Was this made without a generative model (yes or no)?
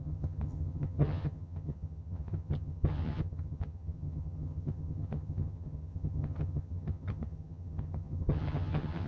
no